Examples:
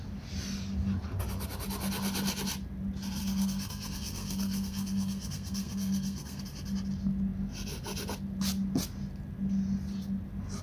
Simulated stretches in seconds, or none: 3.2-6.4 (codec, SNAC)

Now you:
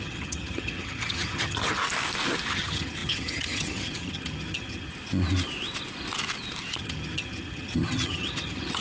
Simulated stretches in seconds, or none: 0.0-1.8 (vocoder, HiFi-GAN); 2.5-4.9; 6.8-8.8

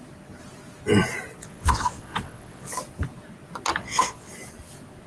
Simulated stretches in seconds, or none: 1.4-2.7 (vocoder, WaveNeXt); 3.8-4.3

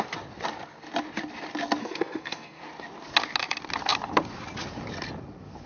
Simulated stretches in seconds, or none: 1.8-2.6 (codec, SNAC)

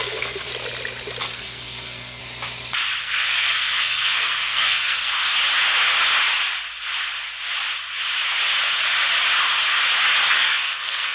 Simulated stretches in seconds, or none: 0.0-0.5 (codec, SNAC); 1.2-2.2; 3.0-5.1; 10.3-11.1

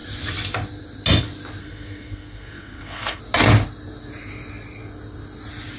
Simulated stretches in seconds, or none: 1.6-3.2 (codec, SNAC)

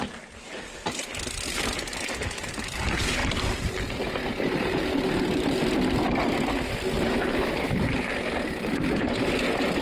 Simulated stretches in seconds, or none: none